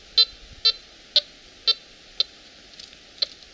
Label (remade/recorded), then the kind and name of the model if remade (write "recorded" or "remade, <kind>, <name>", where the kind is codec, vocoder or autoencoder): recorded